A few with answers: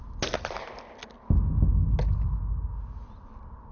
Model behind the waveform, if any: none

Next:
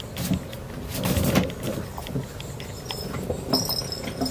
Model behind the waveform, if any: none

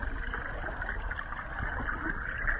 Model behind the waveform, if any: vocoder, BigVGAN v2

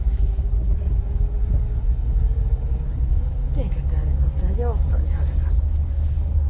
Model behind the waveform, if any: codec, DAC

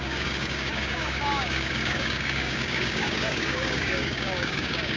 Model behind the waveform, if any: codec, DAC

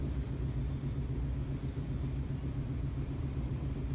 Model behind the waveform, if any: none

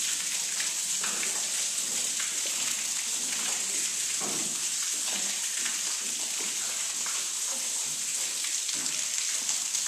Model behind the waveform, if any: none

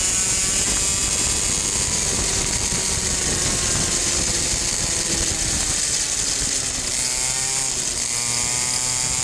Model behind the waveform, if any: none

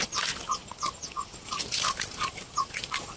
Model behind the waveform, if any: none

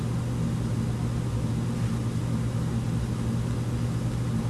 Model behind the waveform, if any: none